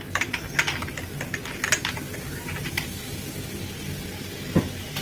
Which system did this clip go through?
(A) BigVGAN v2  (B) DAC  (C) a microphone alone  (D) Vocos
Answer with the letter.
C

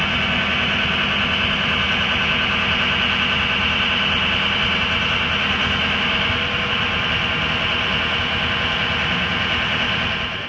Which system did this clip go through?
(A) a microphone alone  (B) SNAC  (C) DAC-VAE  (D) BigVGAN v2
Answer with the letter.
A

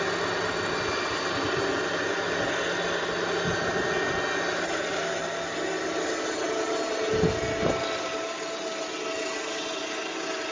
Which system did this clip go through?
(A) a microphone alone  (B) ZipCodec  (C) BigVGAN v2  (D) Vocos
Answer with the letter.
A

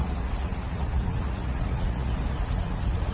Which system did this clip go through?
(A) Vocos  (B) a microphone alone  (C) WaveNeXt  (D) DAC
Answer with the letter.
A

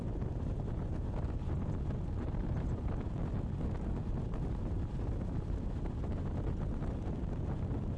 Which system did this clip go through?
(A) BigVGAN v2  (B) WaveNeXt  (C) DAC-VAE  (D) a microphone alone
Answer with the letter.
D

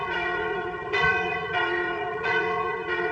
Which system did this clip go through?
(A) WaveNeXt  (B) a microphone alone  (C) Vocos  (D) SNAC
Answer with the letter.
C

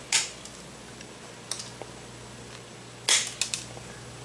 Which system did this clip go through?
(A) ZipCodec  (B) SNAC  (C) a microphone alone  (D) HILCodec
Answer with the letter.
C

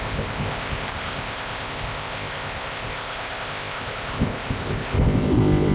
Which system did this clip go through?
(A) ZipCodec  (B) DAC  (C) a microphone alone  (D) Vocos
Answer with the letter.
A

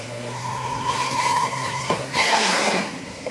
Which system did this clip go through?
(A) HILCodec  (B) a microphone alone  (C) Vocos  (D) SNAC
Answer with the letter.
D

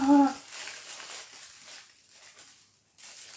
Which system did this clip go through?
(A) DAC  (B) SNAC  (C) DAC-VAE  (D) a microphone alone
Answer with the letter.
D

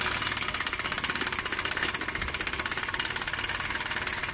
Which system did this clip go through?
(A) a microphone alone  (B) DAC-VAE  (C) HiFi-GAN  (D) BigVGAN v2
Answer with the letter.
A